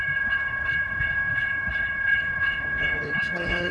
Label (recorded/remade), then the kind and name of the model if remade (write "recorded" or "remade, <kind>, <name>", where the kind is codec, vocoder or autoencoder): remade, codec, HILCodec